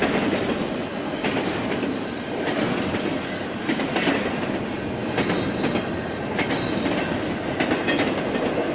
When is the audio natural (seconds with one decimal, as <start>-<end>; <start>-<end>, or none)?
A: 0.0-8.7